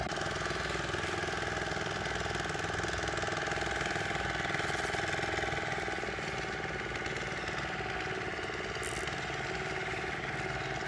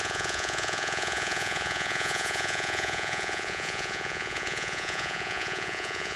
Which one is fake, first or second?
second